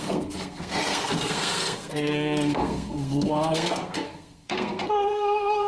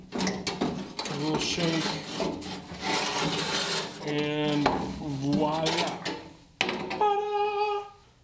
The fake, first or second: first